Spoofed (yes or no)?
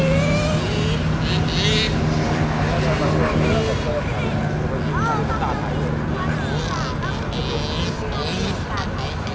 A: no